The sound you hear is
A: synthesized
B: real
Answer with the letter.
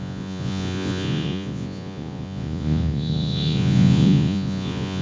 A